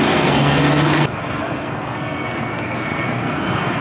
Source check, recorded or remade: remade